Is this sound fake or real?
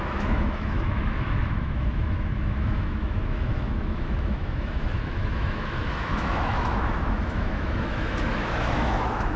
fake